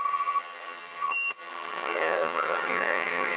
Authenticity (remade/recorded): remade